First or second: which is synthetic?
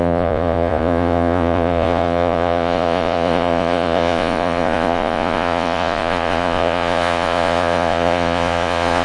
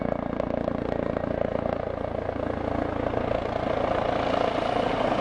first